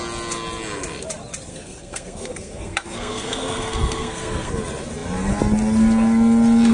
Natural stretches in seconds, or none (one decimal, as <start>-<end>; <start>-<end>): 0.0-1.5; 4.5-6.7